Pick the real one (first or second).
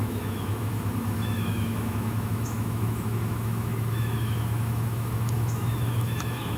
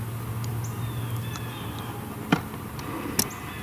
second